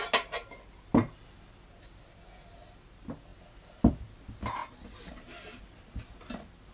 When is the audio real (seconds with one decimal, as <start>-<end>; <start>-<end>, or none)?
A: 0.0-6.7